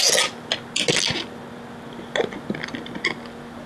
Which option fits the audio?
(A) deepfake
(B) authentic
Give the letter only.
B